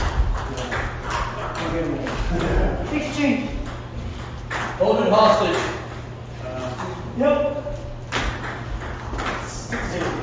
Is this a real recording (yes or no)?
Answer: yes